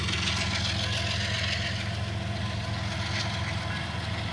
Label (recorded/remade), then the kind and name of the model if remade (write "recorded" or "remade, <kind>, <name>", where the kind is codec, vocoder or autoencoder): recorded